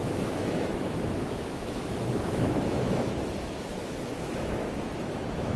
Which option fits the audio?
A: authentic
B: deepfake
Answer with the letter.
B